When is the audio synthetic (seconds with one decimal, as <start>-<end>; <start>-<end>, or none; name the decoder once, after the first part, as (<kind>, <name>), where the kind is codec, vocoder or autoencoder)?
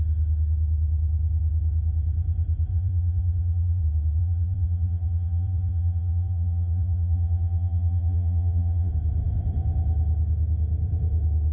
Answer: 2.7-3.8 (vocoder, BigVGAN v2); 4.2-8.9